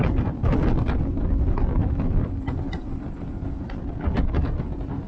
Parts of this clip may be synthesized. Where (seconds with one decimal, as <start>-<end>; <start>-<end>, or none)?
0.4-1.0; 1.8-5.1

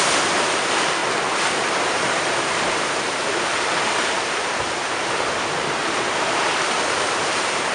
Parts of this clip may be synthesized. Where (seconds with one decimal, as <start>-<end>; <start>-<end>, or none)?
0.0-1.0; 1.6-7.7

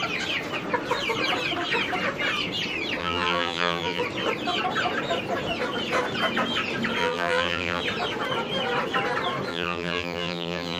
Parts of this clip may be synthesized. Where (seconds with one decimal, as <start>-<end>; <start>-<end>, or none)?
3.0-4.0; 7.0-7.8; 9.5-10.8

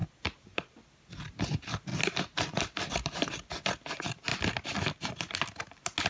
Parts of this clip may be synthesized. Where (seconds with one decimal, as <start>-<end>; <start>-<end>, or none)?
none

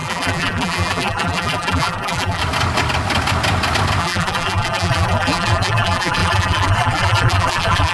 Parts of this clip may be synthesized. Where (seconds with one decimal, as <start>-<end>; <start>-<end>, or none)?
0.0-2.4; 4.0-7.9

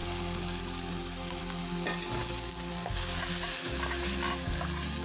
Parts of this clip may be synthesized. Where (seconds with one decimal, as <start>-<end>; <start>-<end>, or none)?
none

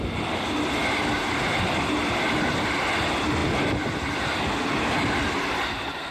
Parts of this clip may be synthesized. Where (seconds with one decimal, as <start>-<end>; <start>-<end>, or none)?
2.0-2.8; 3.4-4.2